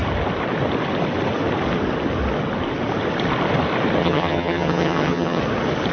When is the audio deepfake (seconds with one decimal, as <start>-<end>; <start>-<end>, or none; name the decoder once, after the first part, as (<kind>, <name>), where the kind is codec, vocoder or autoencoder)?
4.0-5.4 (vocoder, HiFi-GAN)